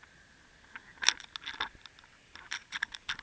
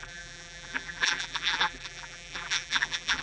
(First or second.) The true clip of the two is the first